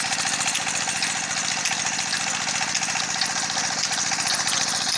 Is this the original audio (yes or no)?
yes